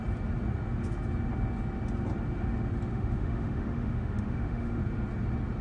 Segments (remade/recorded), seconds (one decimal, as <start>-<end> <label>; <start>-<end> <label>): 0.0-2.9 recorded; 2.9-4.8 remade; 4.8-5.6 recorded